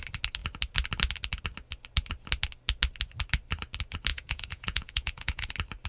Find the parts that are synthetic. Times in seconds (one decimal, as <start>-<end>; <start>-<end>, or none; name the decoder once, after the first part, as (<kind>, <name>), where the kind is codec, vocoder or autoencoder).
4.1-5.5 (vocoder, Vocos)